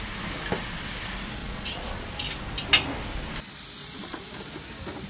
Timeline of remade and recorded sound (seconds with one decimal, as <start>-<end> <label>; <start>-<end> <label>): 0.0-1.4 recorded; 1.4-2.1 remade; 2.1-3.8 recorded; 3.8-4.3 remade; 4.3-5.1 recorded